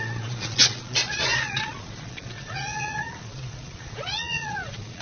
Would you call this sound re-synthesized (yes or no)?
yes